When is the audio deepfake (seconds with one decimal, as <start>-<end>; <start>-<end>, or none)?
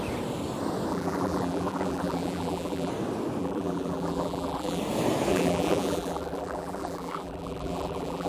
0.9-2.9; 3.4-4.8; 5.3-8.3